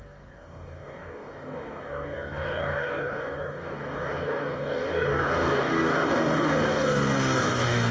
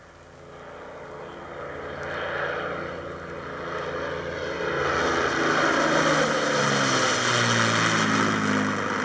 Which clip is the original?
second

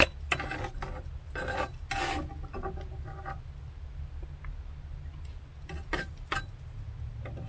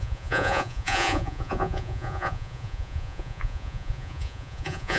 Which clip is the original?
first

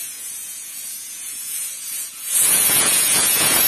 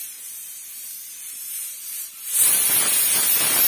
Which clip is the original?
second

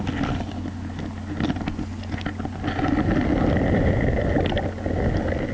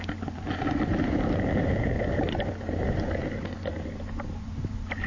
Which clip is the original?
first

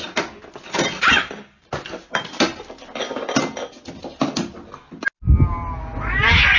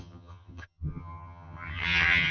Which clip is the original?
first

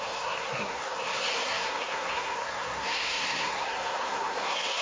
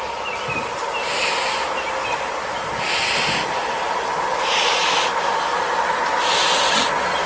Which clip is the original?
second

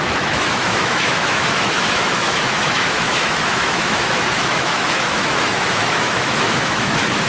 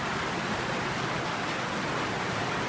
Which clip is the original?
second